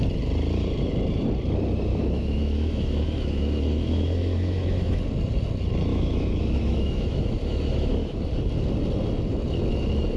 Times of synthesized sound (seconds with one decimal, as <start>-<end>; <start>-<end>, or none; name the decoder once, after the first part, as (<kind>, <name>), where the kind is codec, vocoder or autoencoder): 1.9-5.0 (autoencoder, DAC-VAE); 5.9-8.3